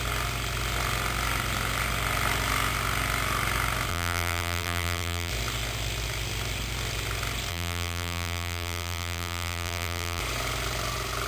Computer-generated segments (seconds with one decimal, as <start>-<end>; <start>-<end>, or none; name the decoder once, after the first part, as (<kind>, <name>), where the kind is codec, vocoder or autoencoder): 3.9-5.3 (vocoder, BigVGAN v2); 7.5-10.2